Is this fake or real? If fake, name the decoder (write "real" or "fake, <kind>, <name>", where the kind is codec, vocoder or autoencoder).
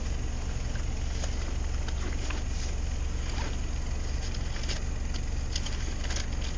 real